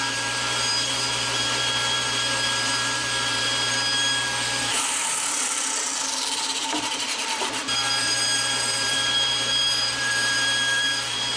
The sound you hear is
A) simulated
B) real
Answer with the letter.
A